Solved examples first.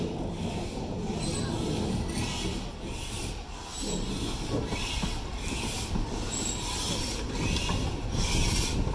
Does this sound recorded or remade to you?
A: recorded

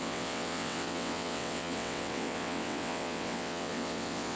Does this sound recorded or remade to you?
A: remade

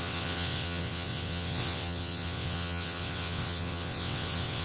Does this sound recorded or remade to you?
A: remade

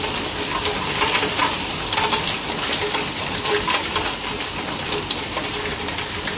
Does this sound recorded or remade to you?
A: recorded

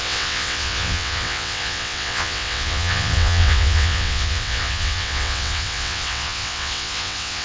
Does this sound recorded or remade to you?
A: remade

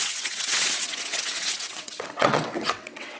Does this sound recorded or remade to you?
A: remade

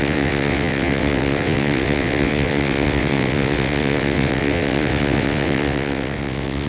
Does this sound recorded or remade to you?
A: remade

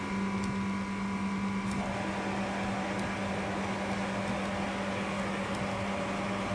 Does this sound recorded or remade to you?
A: recorded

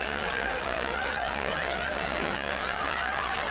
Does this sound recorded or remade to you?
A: remade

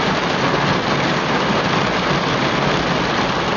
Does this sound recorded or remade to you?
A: recorded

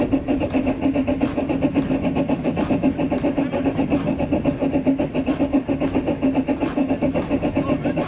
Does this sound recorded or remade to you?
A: recorded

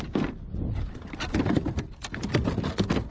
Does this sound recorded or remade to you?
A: recorded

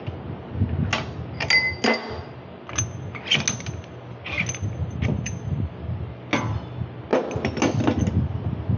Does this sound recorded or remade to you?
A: recorded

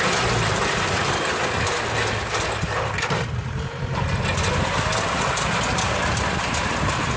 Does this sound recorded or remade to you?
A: recorded